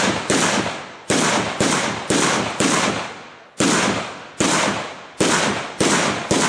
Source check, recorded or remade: recorded